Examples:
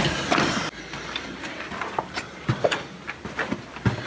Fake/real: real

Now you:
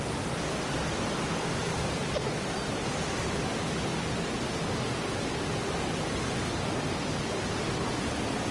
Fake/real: real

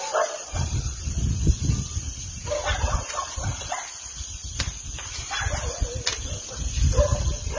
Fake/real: real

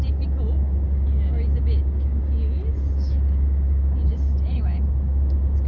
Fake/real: real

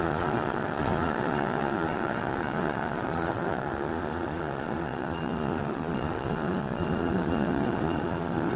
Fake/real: fake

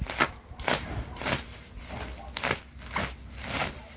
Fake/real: real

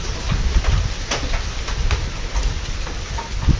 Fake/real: real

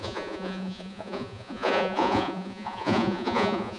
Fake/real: fake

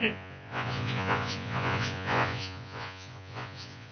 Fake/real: fake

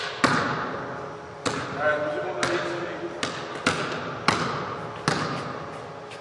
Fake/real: real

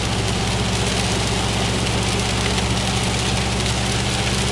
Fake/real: real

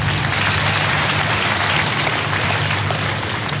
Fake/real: real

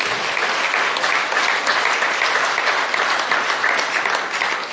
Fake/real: real